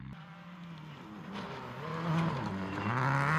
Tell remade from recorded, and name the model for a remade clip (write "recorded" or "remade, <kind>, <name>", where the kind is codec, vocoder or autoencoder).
recorded